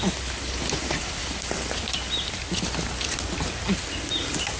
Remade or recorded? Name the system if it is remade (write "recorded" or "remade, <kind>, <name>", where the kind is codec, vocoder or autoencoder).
recorded